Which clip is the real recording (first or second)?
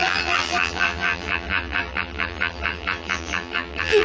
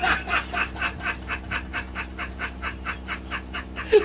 second